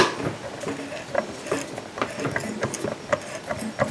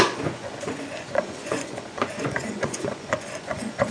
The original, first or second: first